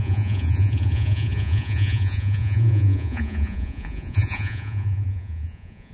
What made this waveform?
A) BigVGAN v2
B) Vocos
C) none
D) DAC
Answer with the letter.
B